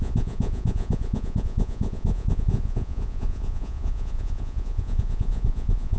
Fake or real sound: fake